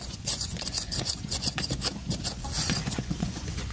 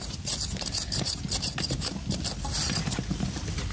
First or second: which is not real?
first